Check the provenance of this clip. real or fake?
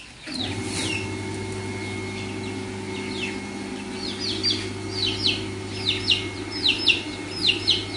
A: real